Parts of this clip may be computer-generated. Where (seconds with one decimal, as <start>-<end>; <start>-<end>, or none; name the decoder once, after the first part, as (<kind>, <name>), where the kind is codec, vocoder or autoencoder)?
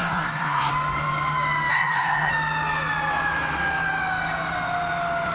0.0-0.7 (codec, SNAC); 1.7-2.3